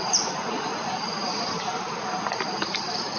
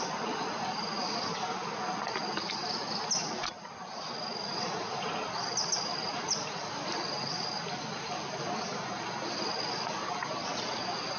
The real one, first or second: second